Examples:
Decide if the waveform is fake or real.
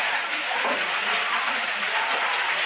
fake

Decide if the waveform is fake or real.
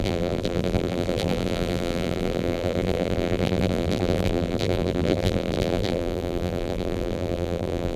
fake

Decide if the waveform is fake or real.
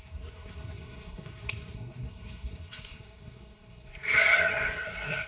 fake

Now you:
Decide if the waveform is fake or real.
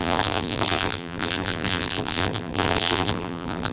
fake